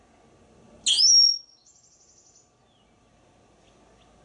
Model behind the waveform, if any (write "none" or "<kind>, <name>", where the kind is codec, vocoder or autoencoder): none